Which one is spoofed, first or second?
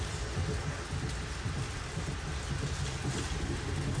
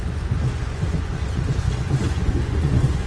second